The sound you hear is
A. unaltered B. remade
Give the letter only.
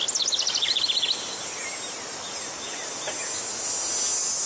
A